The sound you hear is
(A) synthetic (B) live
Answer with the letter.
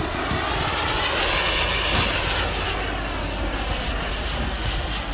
B